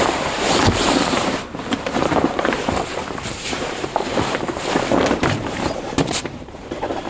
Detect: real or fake fake